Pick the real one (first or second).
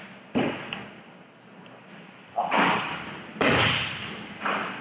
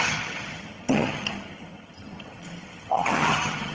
first